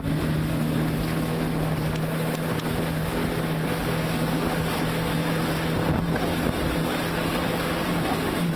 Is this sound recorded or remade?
recorded